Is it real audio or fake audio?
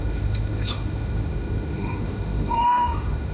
fake